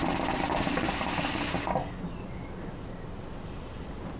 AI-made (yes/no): no